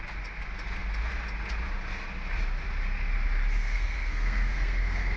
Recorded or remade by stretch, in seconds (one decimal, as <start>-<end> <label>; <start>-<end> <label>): 0.0-3.6 recorded; 3.6-5.2 remade